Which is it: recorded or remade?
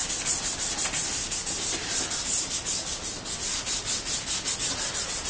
recorded